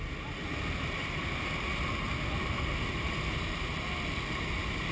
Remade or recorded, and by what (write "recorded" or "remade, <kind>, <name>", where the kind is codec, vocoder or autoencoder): recorded